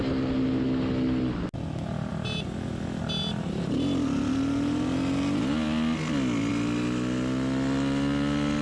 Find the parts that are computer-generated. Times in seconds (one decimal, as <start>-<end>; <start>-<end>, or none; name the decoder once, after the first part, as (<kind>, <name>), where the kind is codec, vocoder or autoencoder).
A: none